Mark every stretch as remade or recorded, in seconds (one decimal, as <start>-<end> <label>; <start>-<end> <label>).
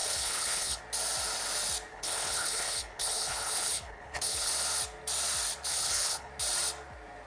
0.0-0.8 remade; 0.8-1.9 recorded; 1.9-4.5 remade; 4.5-5.7 recorded; 5.7-6.3 remade; 6.3-7.3 recorded